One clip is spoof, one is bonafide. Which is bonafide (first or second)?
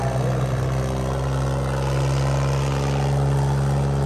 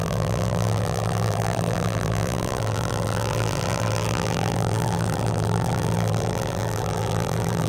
first